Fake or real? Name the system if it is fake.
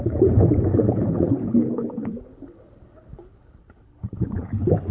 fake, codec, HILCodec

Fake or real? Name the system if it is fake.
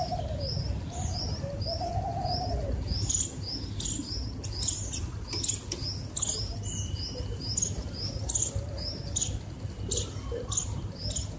real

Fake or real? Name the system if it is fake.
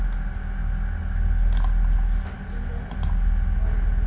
real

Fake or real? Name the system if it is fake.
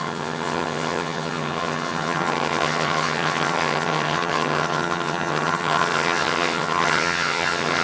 fake, vocoder, HiFi-GAN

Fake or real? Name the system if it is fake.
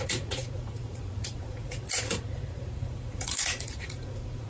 fake, vocoder, Vocos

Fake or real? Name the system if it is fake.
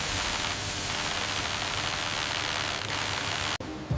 real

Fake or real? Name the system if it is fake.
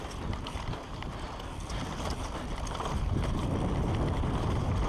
fake, vocoder, BigVGAN v2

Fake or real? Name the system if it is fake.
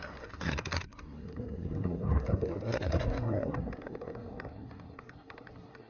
fake, codec, SNAC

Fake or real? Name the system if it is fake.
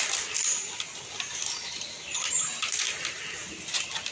real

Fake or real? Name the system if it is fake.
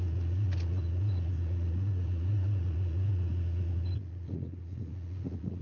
fake, vocoder, Vocos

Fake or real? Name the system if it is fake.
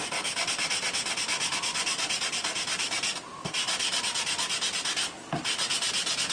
real